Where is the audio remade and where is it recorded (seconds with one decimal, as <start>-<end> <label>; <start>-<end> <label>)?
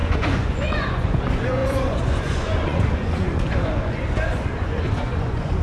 0.0-5.6 remade